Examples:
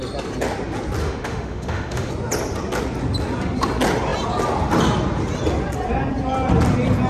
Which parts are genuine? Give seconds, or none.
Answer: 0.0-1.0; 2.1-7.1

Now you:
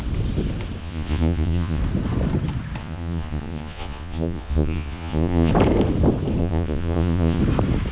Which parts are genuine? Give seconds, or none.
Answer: 0.0-0.8; 1.8-2.8; 5.5-6.4; 7.4-7.9

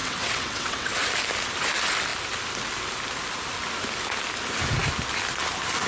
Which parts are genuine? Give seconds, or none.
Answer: 1.1-5.9

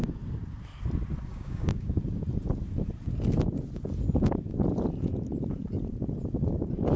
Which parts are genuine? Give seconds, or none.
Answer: 0.0-1.3; 1.9-7.0

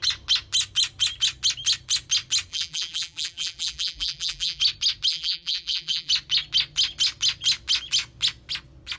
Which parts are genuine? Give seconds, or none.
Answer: 0.0-2.5; 4.6-5.1; 6.1-9.0

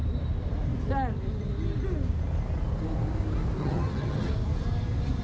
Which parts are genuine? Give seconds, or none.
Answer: 0.0-3.6; 4.3-5.2

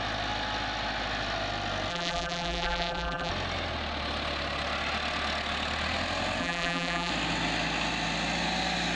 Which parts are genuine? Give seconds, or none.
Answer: 0.0-1.9; 3.3-6.4; 7.1-8.9

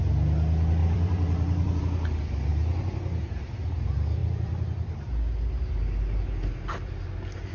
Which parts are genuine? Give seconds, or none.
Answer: 0.0-0.8; 1.8-4.2; 4.9-7.5